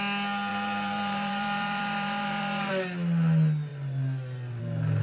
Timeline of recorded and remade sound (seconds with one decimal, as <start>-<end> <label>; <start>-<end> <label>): 0.0-0.5 recorded; 0.5-2.7 remade; 2.7-3.7 recorded; 3.7-4.6 remade; 4.6-5.0 recorded